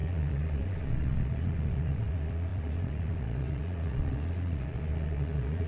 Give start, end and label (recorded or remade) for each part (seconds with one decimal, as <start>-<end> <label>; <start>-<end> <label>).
0.0-5.7 remade